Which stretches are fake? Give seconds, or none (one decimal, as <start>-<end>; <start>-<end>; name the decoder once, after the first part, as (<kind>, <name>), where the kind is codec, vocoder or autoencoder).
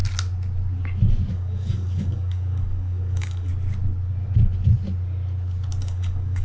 1.3-3.5 (codec, DAC); 5.8-6.4